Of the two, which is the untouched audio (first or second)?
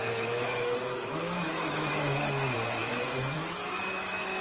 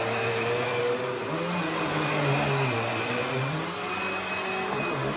second